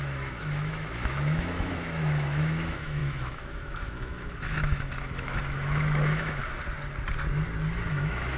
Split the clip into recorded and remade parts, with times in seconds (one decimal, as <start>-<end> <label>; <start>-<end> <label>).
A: 0.0-6.4 remade; 6.4-7.9 recorded; 7.9-8.4 remade